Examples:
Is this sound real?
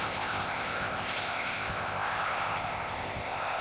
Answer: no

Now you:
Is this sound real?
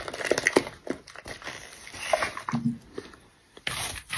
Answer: yes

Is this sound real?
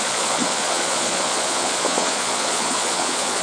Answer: no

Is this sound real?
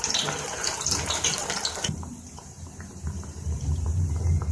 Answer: no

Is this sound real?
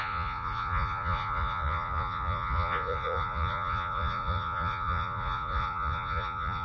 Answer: no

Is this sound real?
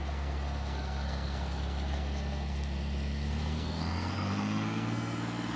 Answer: no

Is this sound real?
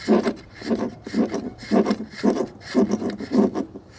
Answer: yes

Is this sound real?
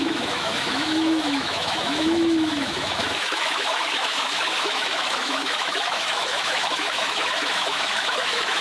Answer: no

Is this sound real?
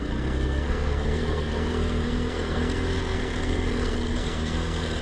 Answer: no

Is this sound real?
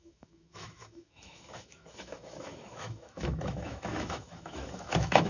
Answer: no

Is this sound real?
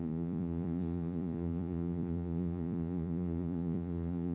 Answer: no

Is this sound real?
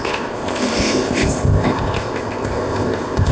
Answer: no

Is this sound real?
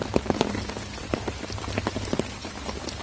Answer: yes